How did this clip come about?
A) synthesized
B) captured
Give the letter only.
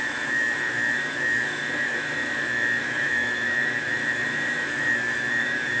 A